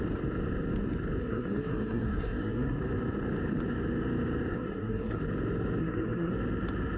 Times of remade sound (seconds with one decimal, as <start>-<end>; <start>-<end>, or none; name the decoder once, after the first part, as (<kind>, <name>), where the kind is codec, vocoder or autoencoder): 1.2-2.8 (codec, SNAC); 4.5-5.2; 5.8-6.3